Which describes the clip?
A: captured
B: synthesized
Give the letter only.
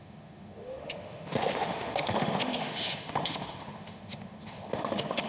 B